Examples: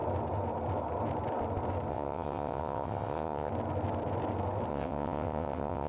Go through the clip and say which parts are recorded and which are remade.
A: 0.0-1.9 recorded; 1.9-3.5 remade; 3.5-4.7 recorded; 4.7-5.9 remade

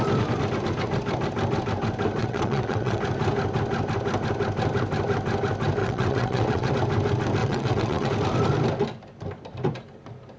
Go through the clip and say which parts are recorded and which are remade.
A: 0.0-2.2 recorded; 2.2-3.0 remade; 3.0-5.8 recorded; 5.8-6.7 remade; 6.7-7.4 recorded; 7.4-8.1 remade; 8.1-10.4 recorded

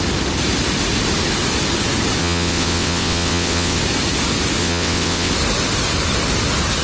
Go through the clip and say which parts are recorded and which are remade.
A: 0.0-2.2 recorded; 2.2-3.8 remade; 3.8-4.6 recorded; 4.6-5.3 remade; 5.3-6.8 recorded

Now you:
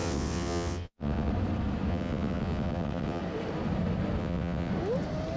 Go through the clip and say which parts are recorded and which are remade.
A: 0.0-1.3 remade; 1.3-1.9 recorded; 1.9-3.2 remade; 3.2-4.2 recorded; 4.2-4.7 remade; 4.7-5.4 recorded

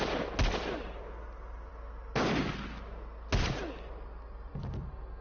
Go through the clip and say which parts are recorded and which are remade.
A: 0.0-5.2 recorded

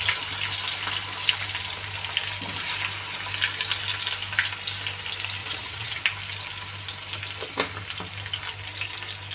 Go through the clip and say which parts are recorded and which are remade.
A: 0.0-5.4 recorded; 5.4-6.0 remade; 6.0-9.3 recorded

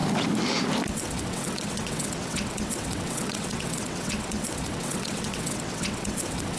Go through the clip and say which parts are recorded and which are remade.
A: 0.0-0.9 recorded; 0.9-6.6 remade